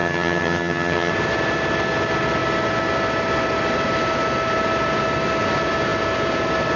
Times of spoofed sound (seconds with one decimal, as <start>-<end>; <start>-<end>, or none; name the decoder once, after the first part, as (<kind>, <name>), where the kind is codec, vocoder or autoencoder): 0.0-1.1 (vocoder, HiFi-GAN)